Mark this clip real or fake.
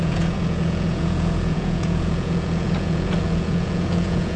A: fake